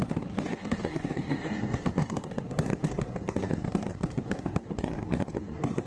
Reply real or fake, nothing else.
fake